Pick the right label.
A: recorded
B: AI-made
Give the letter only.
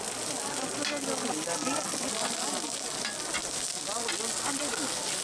A